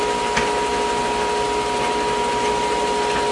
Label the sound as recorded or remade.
recorded